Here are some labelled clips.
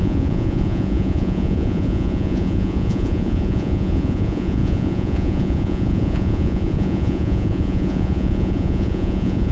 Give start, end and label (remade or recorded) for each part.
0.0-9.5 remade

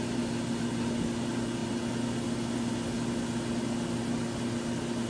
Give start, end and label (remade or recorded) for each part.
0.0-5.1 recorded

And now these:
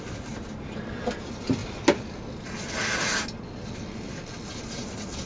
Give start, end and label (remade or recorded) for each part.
0.0-5.3 recorded